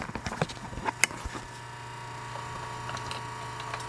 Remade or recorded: recorded